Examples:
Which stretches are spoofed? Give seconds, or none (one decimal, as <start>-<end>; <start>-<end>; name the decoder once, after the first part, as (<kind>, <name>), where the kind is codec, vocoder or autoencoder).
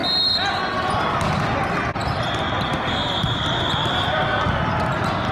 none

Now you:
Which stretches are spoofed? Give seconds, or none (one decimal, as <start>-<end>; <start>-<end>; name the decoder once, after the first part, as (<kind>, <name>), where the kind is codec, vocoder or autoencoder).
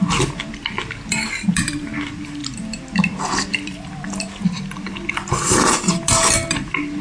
0.0-7.0 (vocoder, BigVGAN v2)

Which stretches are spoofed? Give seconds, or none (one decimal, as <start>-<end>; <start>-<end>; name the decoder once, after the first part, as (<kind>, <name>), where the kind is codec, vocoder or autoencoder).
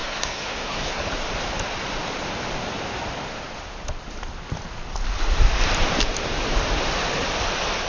0.0-1.0 (codec, SNAC)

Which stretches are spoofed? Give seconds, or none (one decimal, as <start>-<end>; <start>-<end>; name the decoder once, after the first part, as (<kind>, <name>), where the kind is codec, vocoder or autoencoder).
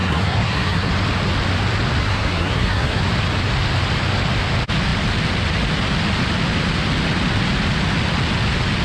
0.0-0.9 (codec, SNAC); 2.0-3.0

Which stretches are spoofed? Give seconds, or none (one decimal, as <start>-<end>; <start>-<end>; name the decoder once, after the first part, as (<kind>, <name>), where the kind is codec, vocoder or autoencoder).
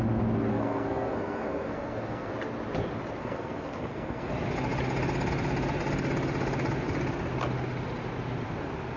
0.5-2.3 (codec, SNAC); 3.2-4.3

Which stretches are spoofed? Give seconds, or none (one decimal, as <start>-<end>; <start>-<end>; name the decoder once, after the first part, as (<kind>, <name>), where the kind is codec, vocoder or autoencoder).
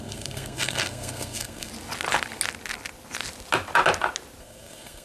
0.0-1.7 (codec, SNAC); 4.4-5.0